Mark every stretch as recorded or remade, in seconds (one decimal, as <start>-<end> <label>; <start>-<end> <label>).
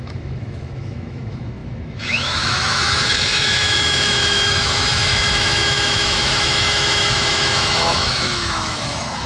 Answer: 0.0-9.3 remade